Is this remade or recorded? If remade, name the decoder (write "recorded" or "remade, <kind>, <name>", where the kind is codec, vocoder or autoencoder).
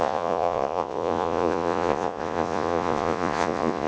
remade, vocoder, Vocos